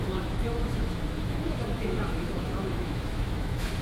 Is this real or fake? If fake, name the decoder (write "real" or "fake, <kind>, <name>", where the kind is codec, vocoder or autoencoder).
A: fake, autoencoder, DAC-VAE